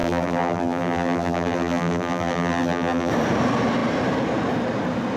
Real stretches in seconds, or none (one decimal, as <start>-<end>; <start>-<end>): 3.1-5.2